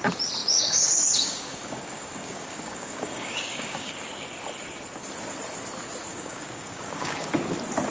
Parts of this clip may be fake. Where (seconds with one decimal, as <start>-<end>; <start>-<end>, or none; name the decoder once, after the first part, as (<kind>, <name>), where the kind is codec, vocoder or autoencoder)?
0.4-4.1 (codec, DAC); 6.1-7.3